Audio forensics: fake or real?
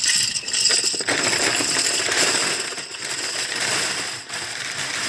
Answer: fake